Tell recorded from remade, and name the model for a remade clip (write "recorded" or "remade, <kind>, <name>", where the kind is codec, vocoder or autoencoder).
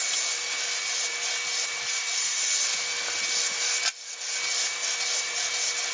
recorded